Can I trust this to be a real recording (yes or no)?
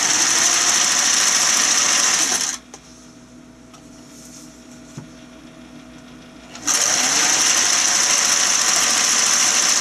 yes